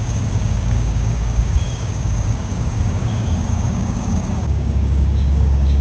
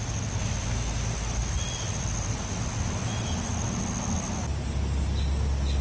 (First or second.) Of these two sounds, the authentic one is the second